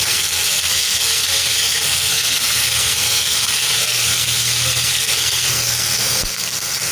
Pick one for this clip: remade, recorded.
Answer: remade